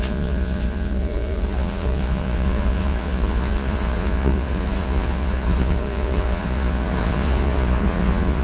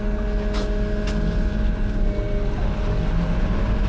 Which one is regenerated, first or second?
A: first